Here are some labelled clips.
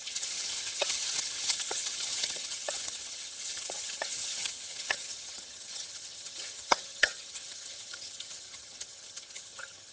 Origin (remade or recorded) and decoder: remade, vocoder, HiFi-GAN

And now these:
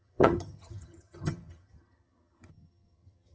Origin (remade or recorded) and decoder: remade, vocoder, HiFi-GAN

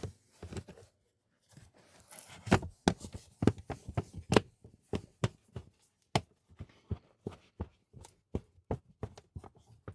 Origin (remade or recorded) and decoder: recorded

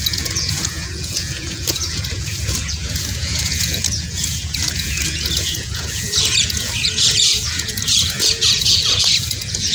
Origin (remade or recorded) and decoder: remade, vocoder, Vocos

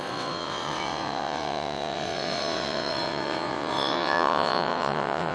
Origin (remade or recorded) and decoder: remade, vocoder, WaveNeXt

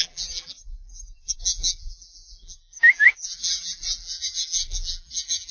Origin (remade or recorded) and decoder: remade, vocoder, BigVGAN v2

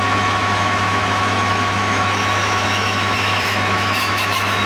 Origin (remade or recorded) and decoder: remade, autoencoder, DAC-VAE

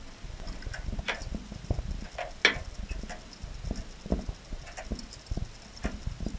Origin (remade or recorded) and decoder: recorded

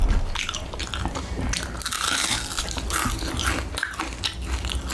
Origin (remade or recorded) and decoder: recorded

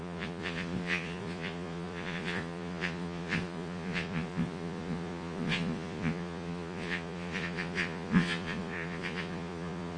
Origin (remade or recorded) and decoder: remade, vocoder, Vocos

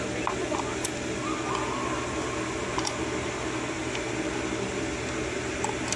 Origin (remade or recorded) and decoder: recorded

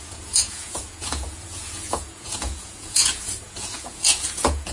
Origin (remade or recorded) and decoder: remade, vocoder, Vocos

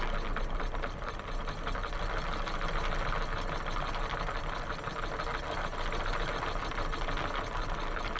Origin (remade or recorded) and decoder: recorded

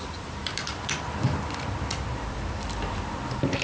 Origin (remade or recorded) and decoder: remade, vocoder, BigVGAN v2